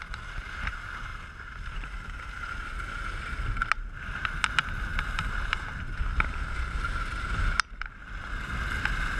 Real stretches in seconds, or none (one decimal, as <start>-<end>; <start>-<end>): 0.0-9.2